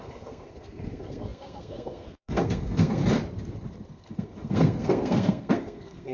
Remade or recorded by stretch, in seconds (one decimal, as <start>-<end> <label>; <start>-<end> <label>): 0.0-3.0 remade; 3.0-3.9 recorded; 3.9-6.1 remade